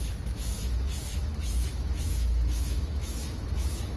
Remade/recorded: remade